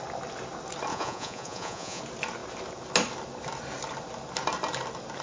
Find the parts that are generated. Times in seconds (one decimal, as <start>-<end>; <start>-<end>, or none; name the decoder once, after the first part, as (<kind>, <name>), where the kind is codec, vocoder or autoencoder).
0.9-2.0 (vocoder, Vocos)